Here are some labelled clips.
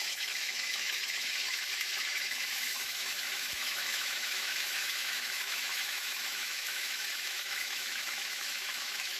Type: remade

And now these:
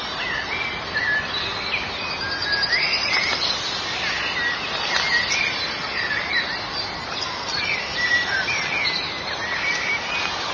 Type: recorded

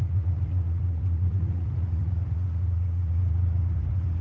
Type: remade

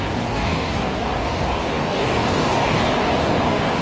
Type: remade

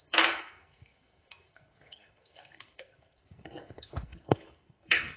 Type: remade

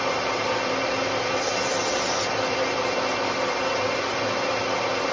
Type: recorded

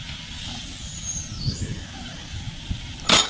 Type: recorded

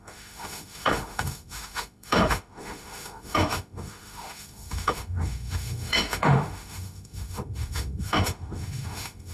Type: remade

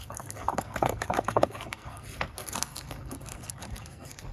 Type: remade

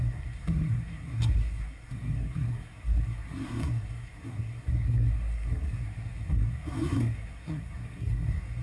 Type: remade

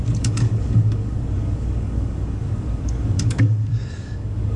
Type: remade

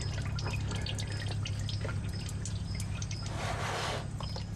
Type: recorded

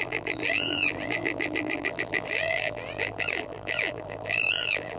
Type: remade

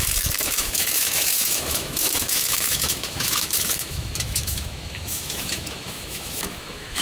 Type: remade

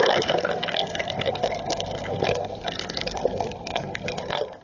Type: remade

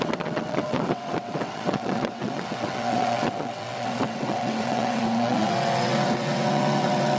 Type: remade